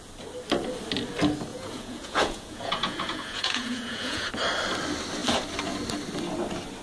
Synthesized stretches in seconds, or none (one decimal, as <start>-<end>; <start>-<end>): 1.5-4.3